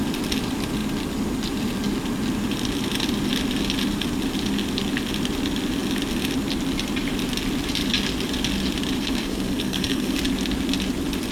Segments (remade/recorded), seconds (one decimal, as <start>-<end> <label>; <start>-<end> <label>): 0.0-9.0 recorded; 9.0-10.2 remade; 10.2-11.3 recorded